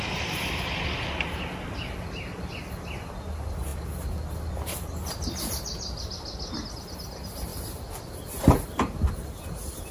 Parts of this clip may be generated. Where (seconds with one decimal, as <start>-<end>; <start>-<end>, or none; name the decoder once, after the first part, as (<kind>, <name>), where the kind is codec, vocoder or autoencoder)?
none